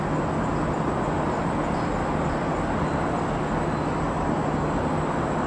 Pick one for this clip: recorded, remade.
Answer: recorded